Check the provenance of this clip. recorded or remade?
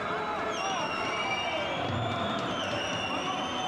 recorded